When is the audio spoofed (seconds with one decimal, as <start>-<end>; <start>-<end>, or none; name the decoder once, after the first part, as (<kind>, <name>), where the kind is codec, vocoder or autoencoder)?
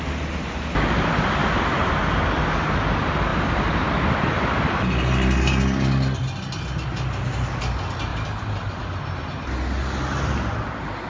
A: 1.4-1.9 (vocoder, BigVGAN v2); 8.1-8.8